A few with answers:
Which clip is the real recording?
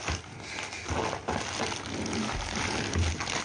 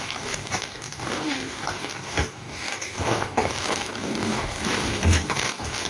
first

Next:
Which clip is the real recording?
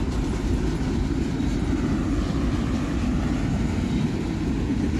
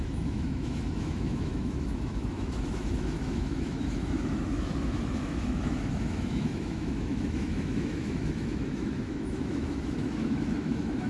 first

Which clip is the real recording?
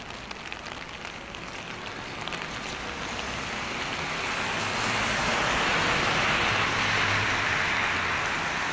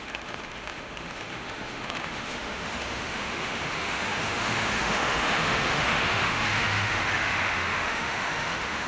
first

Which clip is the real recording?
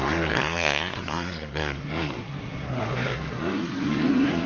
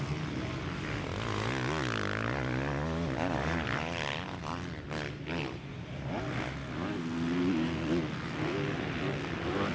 second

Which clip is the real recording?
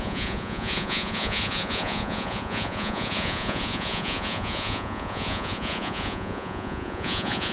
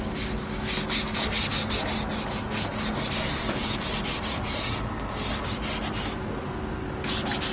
second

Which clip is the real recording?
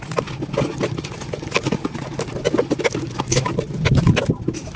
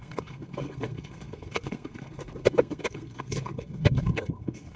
first